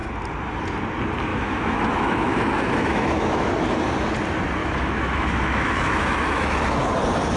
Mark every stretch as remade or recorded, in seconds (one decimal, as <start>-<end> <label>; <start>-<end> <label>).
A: 0.0-1.3 recorded; 1.3-3.5 remade; 3.5-4.6 recorded; 4.6-6.9 remade; 6.9-7.4 recorded